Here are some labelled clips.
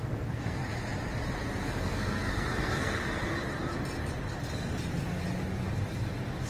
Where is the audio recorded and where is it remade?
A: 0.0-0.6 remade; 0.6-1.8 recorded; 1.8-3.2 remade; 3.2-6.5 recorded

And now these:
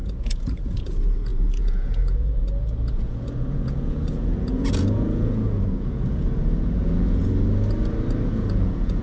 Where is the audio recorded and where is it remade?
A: 0.0-7.2 remade; 7.2-8.3 recorded; 8.3-9.0 remade

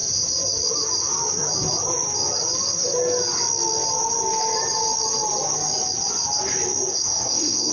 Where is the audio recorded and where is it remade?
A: 0.0-6.9 recorded; 6.9-7.7 remade

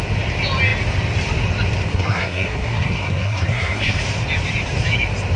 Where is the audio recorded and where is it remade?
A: 0.0-1.9 recorded; 1.9-4.0 remade; 4.0-5.4 recorded

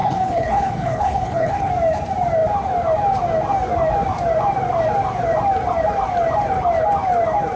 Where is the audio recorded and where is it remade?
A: 0.0-1.7 remade; 1.7-7.6 recorded